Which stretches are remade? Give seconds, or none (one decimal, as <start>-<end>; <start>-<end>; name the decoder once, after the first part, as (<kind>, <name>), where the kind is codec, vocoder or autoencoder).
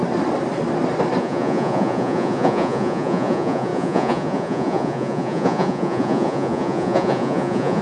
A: 1.2-7.8 (vocoder, Vocos)